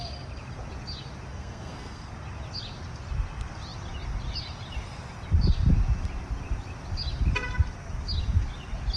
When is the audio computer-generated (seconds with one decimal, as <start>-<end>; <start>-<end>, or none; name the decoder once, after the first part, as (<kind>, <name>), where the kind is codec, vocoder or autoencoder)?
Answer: 1.3-2.1 (codec, SNAC)